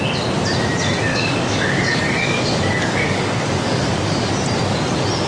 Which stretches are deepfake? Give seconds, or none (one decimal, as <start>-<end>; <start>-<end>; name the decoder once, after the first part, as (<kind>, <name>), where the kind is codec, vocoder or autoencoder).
1.1-4.3 (codec, DAC)